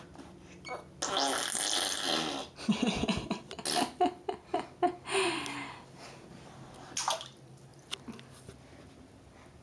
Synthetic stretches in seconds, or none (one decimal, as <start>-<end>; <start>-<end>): none